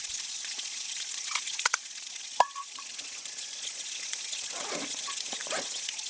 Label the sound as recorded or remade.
remade